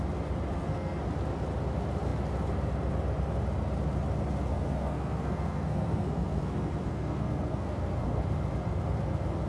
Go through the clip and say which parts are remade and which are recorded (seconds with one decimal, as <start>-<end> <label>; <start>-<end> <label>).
0.0-0.5 recorded; 0.5-1.0 remade; 1.0-4.5 recorded; 4.5-8.2 remade; 8.2-9.5 recorded